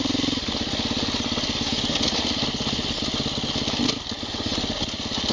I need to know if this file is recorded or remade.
recorded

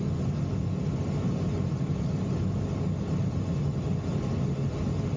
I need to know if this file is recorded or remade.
recorded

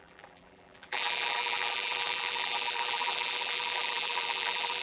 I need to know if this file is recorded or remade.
remade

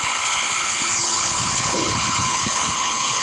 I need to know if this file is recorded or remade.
remade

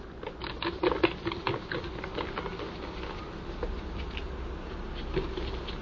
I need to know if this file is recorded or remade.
recorded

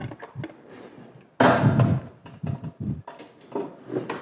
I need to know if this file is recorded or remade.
recorded